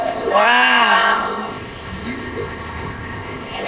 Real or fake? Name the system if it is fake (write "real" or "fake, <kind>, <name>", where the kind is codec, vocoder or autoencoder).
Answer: fake, codec, ZipCodec